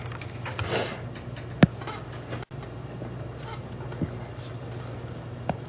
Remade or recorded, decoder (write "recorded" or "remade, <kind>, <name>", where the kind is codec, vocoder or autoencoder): recorded